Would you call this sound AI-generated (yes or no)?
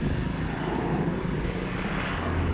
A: yes